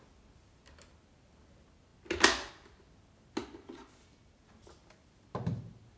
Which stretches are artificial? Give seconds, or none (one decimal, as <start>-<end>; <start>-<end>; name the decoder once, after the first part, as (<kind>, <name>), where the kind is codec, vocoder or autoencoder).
none